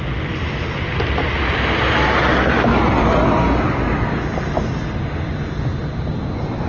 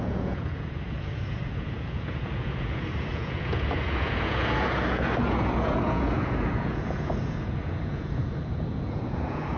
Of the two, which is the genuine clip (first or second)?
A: first